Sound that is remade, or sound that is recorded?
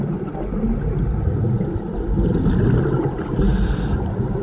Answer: recorded